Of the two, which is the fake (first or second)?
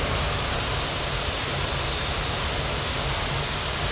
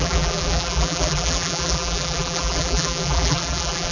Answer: second